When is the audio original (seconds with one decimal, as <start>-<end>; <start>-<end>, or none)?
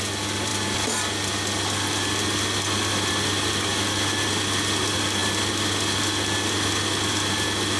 0.0-7.8